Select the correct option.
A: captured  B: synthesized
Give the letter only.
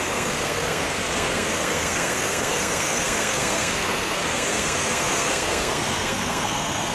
B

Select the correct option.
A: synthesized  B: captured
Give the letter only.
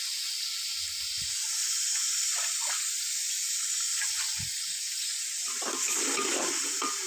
B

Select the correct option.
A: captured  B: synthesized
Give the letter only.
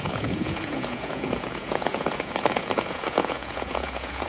B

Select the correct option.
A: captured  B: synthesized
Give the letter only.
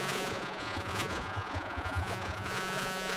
B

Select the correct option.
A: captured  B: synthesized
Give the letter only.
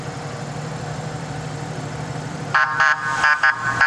B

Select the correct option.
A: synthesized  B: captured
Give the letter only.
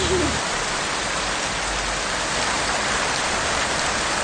B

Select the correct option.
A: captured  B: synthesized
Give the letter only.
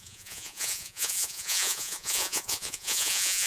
B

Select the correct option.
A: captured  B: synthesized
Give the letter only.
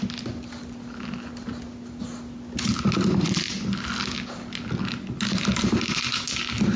A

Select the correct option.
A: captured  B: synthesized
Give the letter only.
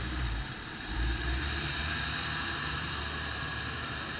B